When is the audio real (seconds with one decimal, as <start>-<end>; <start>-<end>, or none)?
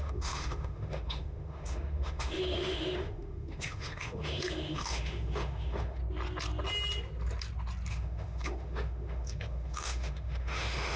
6.0-7.9